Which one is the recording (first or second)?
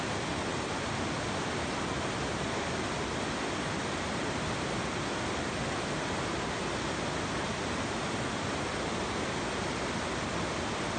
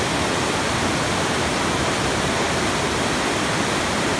first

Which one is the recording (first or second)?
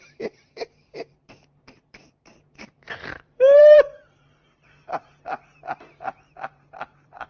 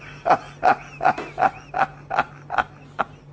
second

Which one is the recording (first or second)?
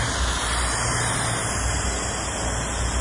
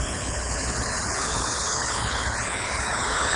first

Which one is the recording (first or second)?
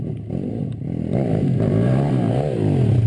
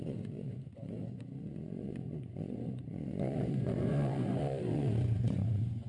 first